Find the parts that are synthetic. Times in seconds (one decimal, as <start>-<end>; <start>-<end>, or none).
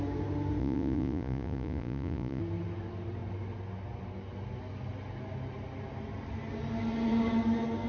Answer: 0.6-2.4